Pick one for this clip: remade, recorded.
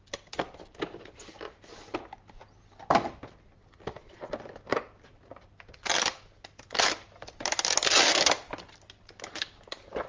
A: recorded